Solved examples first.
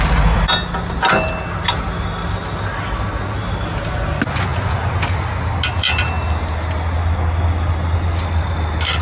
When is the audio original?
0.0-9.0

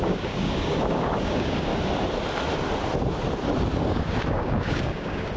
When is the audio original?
1.7-3.8

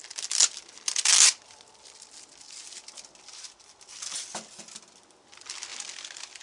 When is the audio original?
0.0-6.4

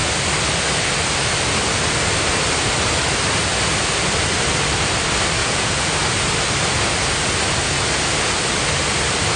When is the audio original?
0.0-5.4; 5.9-9.4

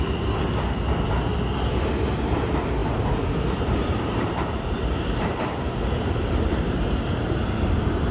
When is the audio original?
0.0-2.8